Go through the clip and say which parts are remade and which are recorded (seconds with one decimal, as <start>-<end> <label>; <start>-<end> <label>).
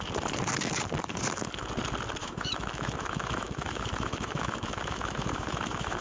0.0-2.2 recorded; 2.2-6.0 remade